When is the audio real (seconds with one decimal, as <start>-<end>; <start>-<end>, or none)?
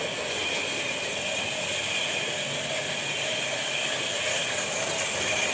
0.0-5.5